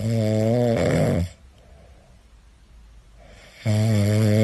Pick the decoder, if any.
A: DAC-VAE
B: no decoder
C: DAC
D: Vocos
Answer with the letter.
B